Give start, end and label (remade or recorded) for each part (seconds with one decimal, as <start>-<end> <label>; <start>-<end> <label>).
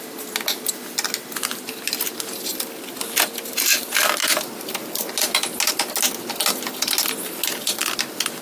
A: 0.0-8.4 recorded